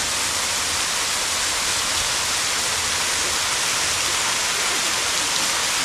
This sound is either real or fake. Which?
real